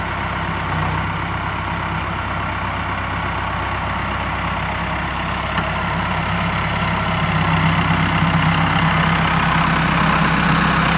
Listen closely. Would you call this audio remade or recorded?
recorded